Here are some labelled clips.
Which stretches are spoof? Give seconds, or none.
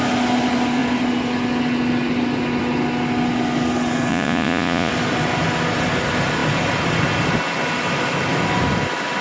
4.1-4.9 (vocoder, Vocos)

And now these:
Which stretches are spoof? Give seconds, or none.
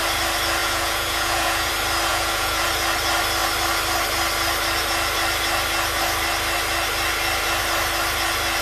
0.6-1.7 (vocoder, Vocos); 2.1-2.7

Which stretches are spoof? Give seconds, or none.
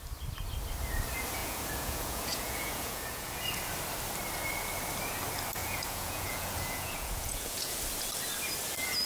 1.4-3.6 (vocoder, Vocos); 5.6-7.8